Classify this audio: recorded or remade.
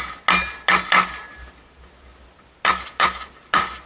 recorded